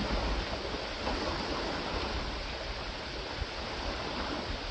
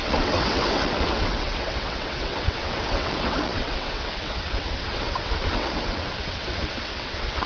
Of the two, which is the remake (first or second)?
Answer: second